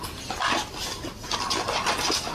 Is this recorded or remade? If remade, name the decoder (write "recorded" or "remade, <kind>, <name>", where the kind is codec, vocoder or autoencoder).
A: recorded